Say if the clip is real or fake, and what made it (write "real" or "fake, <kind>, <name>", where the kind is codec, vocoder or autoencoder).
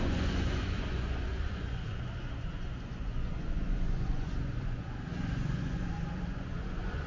fake, vocoder, Vocos